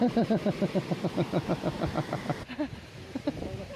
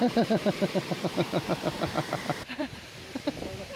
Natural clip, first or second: first